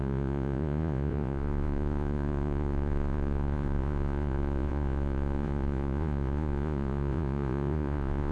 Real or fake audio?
fake